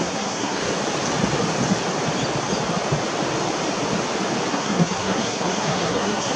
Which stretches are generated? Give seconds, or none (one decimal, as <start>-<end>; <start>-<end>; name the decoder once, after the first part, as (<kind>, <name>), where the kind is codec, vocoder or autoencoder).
0.0-0.7 (codec, SNAC); 4.5-6.4